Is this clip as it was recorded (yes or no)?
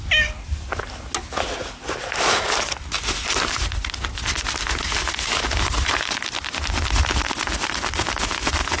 yes